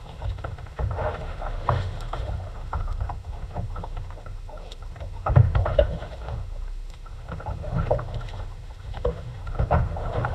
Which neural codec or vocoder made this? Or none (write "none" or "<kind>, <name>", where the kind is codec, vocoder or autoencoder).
autoencoder, DAC-VAE